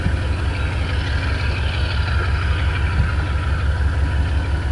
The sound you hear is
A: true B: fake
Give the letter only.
A